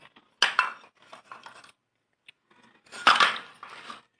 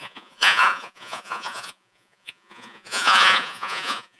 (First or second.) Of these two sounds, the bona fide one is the first